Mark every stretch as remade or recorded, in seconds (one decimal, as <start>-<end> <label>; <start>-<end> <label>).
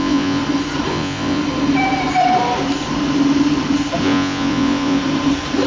0.0-0.4 remade; 0.4-0.9 recorded; 0.9-1.4 remade; 1.4-4.0 recorded; 4.0-5.0 remade; 5.0-5.7 recorded